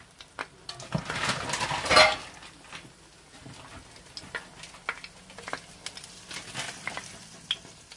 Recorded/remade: recorded